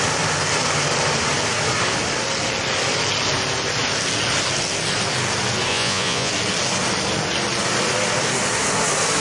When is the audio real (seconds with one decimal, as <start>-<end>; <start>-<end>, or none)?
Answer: 0.0-5.7; 6.3-9.2